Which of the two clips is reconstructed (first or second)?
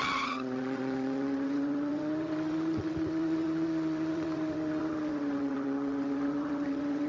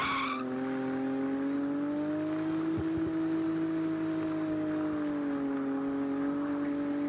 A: first